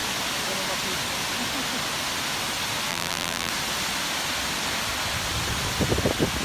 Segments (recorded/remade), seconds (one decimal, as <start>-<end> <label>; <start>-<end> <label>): 0.0-2.9 recorded; 2.9-3.5 remade; 3.5-6.4 recorded